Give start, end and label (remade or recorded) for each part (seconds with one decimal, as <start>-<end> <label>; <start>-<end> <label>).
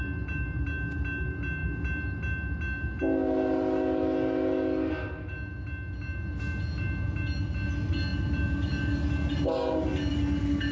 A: 0.0-10.7 recorded